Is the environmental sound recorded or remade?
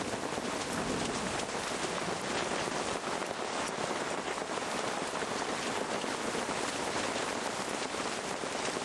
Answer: recorded